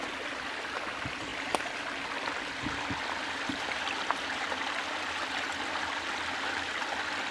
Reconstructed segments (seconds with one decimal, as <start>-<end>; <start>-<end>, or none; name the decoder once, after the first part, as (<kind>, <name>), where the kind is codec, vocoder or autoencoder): none